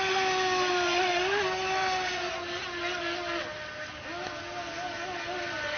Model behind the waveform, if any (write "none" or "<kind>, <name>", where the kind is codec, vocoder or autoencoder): none